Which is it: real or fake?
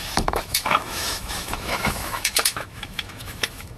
fake